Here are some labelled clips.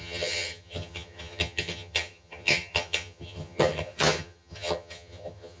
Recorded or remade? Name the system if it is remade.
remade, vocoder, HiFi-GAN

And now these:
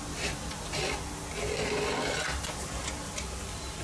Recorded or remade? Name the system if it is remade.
recorded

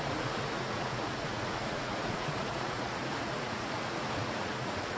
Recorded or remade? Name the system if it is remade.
remade, vocoder, Vocos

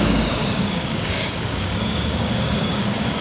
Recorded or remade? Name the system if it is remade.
remade, codec, DAC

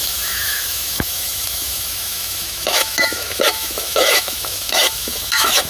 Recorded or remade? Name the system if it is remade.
remade, autoencoder, DAC-VAE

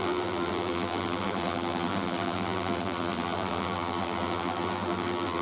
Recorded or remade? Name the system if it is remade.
remade, vocoder, BigVGAN v2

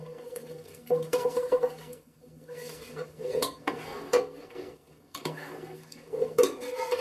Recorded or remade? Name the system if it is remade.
remade, codec, SNAC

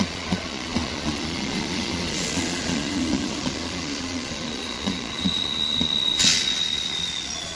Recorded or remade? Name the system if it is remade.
remade, vocoder, Vocos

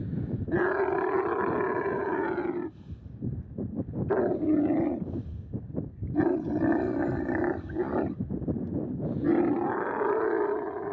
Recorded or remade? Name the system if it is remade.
recorded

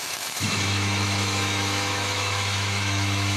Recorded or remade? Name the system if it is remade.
remade, autoencoder, DAC-VAE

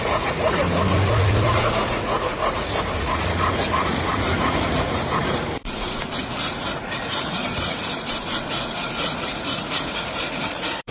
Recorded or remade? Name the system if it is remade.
remade, vocoder, Vocos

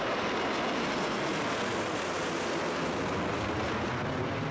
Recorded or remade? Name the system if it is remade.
recorded